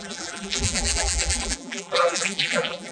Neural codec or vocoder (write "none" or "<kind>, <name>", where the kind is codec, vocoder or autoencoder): vocoder, BigVGAN v2